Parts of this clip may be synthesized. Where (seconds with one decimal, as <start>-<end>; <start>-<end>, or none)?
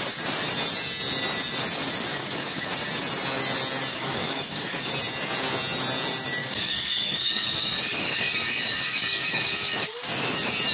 2.1-2.7; 3.9-4.9; 6.4-10.1